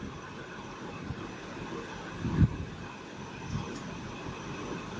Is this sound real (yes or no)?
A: yes